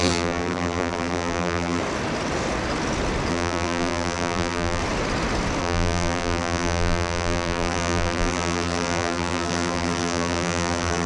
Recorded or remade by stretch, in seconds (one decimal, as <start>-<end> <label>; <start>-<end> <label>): 0.0-1.8 remade; 1.8-3.3 recorded; 3.3-4.8 remade; 4.8-5.6 recorded; 5.6-11.1 remade